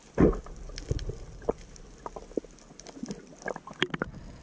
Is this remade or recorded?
recorded